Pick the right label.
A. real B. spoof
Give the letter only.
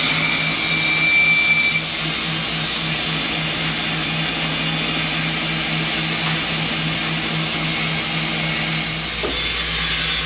A